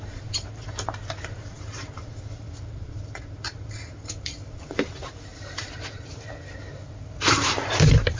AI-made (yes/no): yes